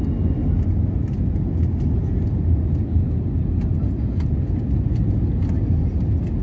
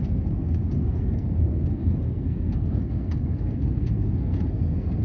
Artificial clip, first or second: second